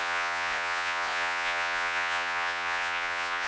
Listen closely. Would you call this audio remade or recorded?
remade